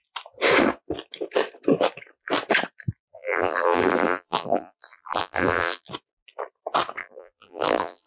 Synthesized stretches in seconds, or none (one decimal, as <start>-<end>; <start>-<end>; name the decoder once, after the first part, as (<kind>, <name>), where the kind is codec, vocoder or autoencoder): 3.1-5.9 (vocoder, BigVGAN v2); 7.0-8.1